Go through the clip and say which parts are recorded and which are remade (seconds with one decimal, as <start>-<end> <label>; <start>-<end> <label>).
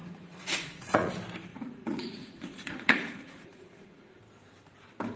0.0-1.1 remade; 1.1-1.5 recorded; 1.5-4.2 remade; 4.2-5.2 recorded